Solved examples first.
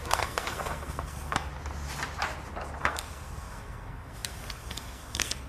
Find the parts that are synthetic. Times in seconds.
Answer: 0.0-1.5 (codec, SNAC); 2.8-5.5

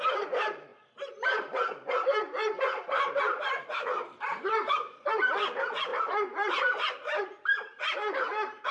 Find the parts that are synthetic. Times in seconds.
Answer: 0.0-8.7 (vocoder, BigVGAN v2)

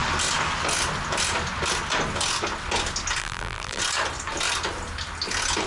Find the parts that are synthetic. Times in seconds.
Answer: 3.2-3.8 (vocoder, BigVGAN v2)

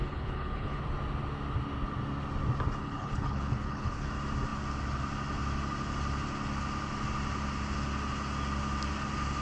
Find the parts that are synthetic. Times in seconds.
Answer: 0.0-0.8 (codec, HILCodec); 2.8-4.1